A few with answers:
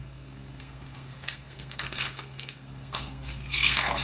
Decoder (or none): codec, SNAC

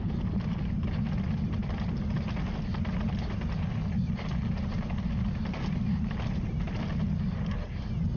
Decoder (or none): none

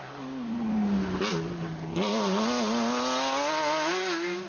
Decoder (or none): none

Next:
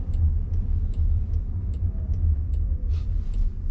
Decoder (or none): none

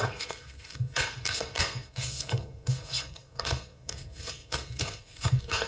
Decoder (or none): codec, SNAC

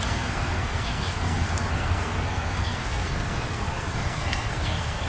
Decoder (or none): codec, SNAC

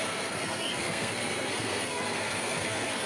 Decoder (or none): codec, SNAC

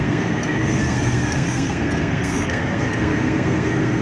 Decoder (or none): codec, SNAC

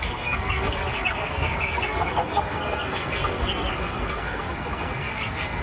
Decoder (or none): codec, SNAC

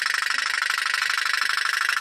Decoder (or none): none